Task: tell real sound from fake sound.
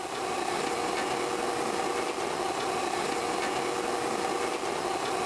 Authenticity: real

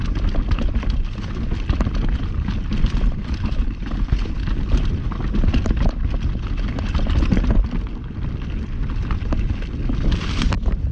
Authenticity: real